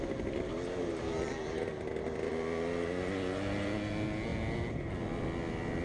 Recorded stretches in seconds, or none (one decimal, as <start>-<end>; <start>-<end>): 0.0-5.8